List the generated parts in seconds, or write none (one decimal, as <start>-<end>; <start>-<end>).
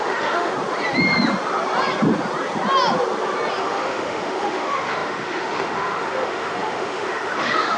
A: 0.0-0.5; 3.6-7.8